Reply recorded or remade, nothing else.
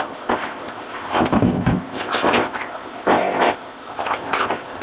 remade